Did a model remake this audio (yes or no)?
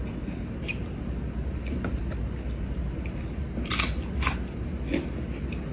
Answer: no